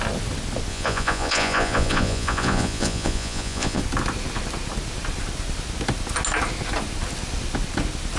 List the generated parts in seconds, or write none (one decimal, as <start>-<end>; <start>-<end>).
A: 0.7-3.8